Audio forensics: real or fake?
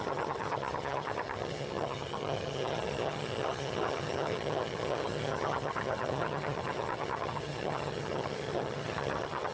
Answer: fake